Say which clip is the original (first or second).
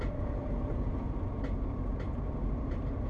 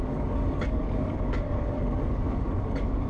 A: first